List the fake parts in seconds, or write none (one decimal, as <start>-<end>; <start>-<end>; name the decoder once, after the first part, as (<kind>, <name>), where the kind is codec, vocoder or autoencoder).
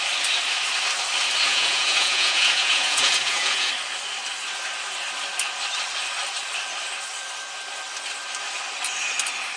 1.5-3.7 (vocoder, Vocos)